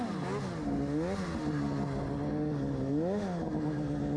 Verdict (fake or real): real